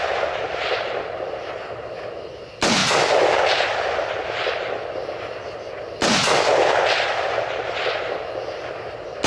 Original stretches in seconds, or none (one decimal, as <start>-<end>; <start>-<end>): 0.0-9.3